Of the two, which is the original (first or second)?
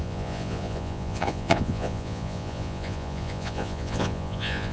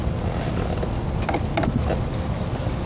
second